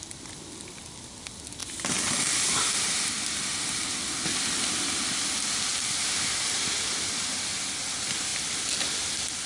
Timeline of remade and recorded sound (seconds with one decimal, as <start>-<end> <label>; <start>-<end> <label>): 0.0-5.7 recorded; 5.7-6.6 remade; 6.6-9.5 recorded